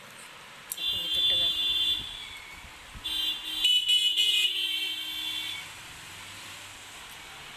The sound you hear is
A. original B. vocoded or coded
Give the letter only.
A